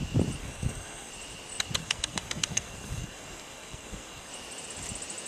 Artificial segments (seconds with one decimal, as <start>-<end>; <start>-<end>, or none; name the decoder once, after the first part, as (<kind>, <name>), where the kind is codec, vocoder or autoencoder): 0.4-1.1 (codec, SNAC); 1.8-4.3